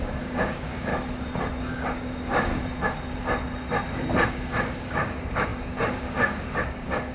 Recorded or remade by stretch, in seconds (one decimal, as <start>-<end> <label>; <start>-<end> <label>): 0.0-0.9 remade; 0.9-1.6 recorded; 1.6-2.5 remade; 2.5-4.3 recorded; 4.3-7.1 remade